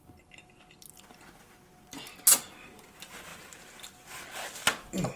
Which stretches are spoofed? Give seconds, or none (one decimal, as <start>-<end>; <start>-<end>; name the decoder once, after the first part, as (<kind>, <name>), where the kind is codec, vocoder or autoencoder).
none